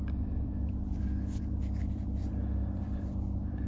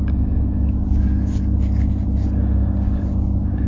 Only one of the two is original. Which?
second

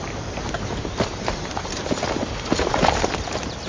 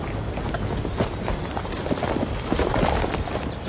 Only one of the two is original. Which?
second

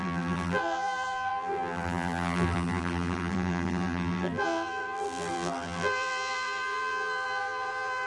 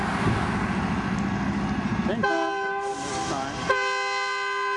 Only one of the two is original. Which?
second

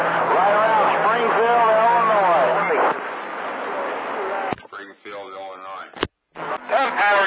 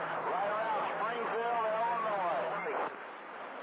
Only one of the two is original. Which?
first